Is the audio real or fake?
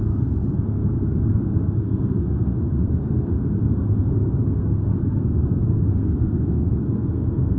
fake